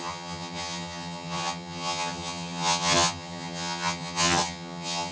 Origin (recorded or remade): remade